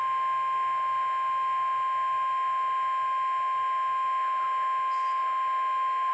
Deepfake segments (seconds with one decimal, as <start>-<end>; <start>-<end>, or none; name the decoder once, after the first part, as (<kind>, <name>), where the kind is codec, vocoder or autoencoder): none

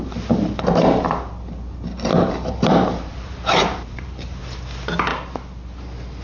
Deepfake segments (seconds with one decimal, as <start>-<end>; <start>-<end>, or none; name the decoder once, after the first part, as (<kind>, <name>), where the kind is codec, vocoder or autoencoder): 2.1-4.4 (vocoder, BigVGAN v2)

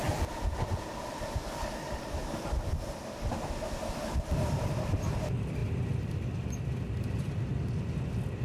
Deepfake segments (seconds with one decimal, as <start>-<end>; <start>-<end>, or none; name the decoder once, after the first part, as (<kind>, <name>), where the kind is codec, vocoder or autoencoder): none

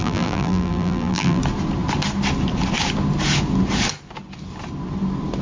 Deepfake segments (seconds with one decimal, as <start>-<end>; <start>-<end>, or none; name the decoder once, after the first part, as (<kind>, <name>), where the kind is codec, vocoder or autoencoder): 0.0-1.4 (vocoder, BigVGAN v2)

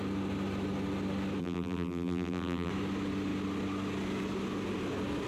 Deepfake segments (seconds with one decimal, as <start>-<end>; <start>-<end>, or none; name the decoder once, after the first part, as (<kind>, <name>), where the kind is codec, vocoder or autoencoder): 1.4-2.7 (vocoder, BigVGAN v2)